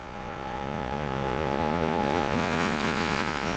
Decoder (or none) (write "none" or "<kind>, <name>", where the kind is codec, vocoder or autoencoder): vocoder, Vocos